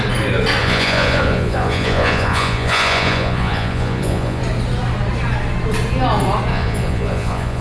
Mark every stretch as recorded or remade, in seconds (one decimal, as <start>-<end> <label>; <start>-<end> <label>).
0.0-0.6 recorded; 0.6-4.4 remade; 4.4-6.5 recorded; 6.5-7.6 remade